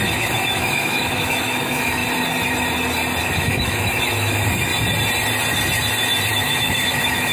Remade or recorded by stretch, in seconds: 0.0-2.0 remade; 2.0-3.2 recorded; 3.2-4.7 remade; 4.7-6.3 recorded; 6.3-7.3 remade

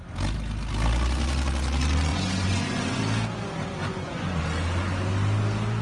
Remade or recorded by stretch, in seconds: 0.0-2.1 recorded; 2.1-3.0 remade; 3.0-3.9 recorded; 3.9-4.4 remade; 4.4-5.8 recorded

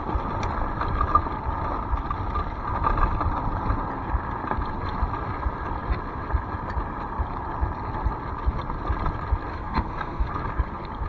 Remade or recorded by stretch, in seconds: 0.0-9.5 recorded; 9.5-10.3 remade; 10.3-11.1 recorded

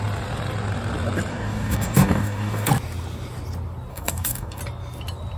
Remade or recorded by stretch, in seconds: 0.0-1.3 recorded; 1.3-2.7 remade; 2.7-3.9 recorded; 3.9-4.6 remade; 4.6-5.4 recorded